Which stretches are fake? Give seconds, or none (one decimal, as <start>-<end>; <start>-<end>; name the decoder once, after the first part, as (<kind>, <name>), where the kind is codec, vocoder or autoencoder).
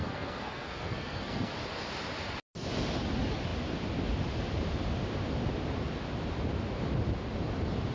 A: 0.0-1.5 (codec, SNAC)